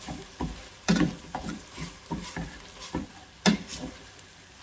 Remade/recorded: recorded